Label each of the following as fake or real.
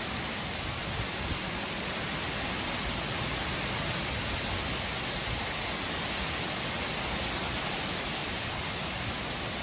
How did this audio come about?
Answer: real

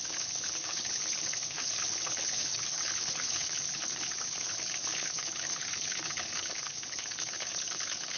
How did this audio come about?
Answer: fake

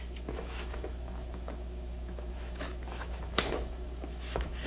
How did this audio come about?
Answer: fake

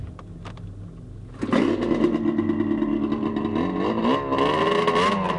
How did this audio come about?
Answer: real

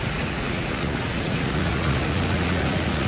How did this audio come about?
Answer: fake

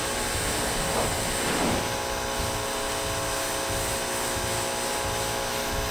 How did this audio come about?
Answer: real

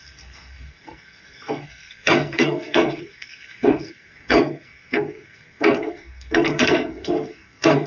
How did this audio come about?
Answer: fake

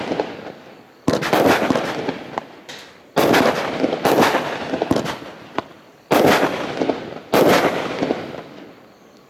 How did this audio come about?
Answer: real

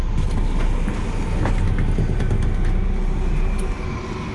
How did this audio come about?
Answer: real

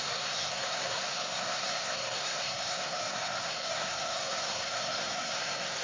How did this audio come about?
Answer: fake